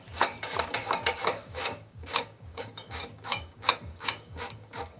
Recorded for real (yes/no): no